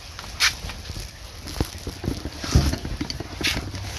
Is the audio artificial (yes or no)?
no